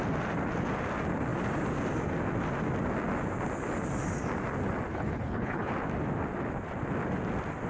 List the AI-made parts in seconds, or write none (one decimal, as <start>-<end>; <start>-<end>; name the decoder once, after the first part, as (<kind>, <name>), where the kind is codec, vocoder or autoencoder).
4.9-5.7 (codec, HILCodec)